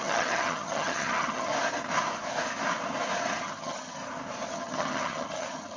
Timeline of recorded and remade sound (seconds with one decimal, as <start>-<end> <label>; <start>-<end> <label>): 0.0-1.5 remade; 1.5-3.4 recorded; 3.4-4.0 remade; 4.0-4.5 recorded; 4.5-5.8 remade